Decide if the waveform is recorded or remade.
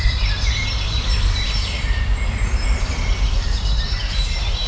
remade